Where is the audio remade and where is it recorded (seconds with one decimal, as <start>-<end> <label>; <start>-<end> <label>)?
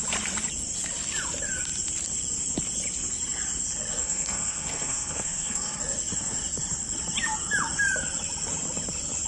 0.0-4.0 recorded; 4.0-5.8 remade; 5.8-9.3 recorded